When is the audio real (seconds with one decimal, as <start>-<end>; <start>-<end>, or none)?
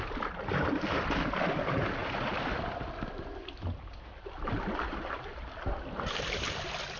0.0-7.0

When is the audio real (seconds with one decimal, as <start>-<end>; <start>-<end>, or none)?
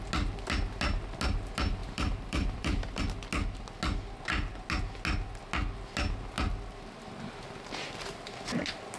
0.0-1.8; 3.0-9.0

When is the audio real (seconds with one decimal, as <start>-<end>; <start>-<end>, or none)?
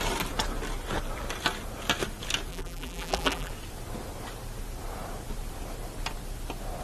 0.0-2.5; 3.5-6.8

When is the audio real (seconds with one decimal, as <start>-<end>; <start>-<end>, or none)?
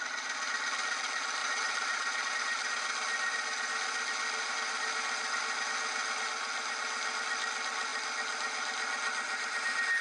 0.0-1.4; 2.3-10.0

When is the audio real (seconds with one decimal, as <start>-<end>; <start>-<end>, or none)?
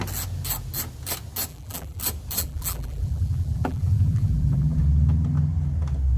0.0-1.5; 2.0-2.4; 4.8-6.2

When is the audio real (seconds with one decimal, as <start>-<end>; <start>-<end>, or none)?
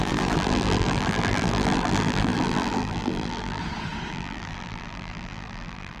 3.6-4.1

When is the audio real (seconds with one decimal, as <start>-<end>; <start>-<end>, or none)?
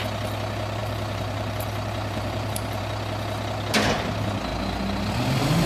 0.0-0.8; 2.8-5.7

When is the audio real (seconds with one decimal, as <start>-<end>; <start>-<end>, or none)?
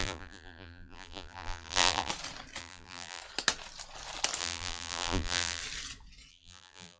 2.1-2.6; 3.2-4.4; 5.6-6.3